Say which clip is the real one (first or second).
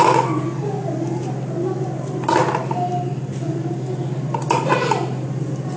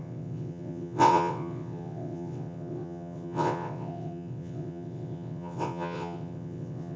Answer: first